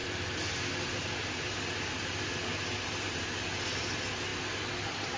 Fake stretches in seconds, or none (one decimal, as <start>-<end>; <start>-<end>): none

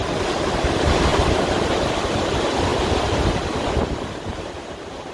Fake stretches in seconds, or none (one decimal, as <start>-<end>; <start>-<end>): none

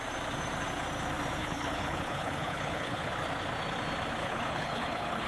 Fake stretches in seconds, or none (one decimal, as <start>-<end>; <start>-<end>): 1.4-3.1; 4.2-5.3

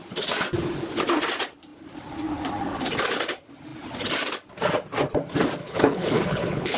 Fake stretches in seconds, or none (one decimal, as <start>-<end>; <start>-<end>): 5.6-6.8

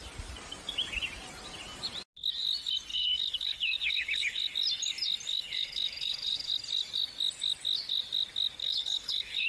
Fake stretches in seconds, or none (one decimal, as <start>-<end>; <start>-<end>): 2.9-4.5; 5.3-6.5; 8.6-9.5

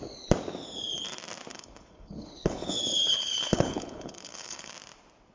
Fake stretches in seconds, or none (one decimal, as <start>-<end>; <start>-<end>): 1.5-4.7